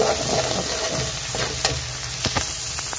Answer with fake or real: real